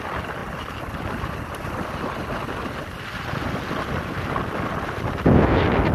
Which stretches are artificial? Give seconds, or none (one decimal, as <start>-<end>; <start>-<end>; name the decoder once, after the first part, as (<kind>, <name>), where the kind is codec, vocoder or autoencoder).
none